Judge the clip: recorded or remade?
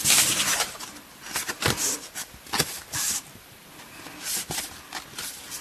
recorded